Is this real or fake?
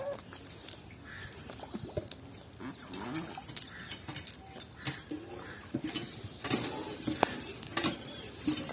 real